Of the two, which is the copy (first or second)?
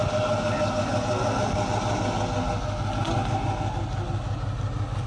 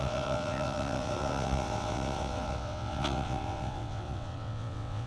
second